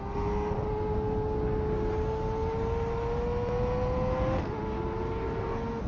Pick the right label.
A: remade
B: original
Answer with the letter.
B